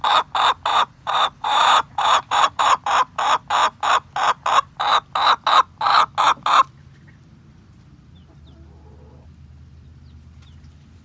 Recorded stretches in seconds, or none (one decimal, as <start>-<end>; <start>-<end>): 0.0-0.7; 2.8-11.0